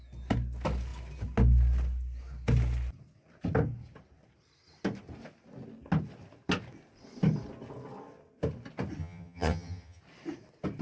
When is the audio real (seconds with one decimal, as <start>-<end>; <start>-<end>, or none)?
0.0-9.0; 10.0-10.8

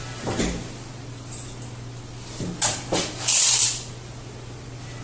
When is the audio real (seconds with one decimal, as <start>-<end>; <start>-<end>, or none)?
0.0-5.0